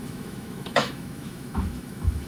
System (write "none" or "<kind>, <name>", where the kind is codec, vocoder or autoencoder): autoencoder, DAC-VAE